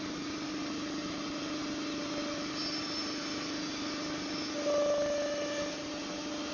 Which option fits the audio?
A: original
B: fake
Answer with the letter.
A